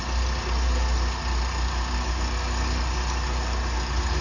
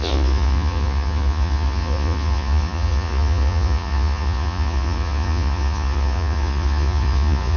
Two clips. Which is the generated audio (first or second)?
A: second